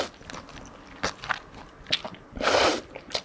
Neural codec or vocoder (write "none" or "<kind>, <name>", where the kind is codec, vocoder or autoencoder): none